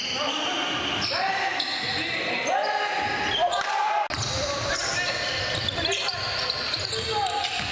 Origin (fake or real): real